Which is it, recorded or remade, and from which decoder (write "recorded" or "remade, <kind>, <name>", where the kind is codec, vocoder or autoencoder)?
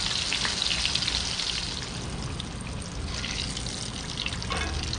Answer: recorded